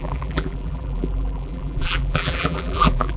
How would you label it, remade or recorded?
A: remade